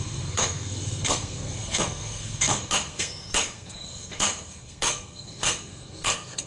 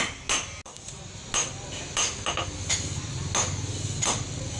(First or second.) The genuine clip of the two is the second